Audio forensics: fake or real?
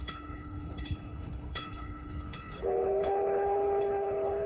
fake